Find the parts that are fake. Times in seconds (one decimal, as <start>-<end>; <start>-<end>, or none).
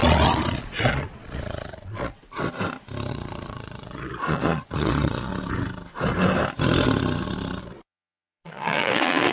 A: 0.0-2.2; 3.1-5.3; 7.6-9.3